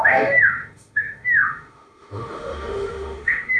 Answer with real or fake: fake